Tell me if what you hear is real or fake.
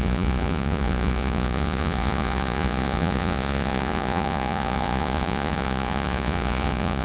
fake